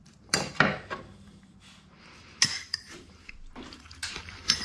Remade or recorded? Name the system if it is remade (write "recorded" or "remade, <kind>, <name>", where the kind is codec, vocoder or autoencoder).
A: remade, vocoder, BigVGAN v2